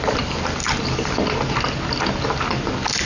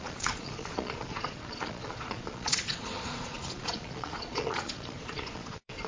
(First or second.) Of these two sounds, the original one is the first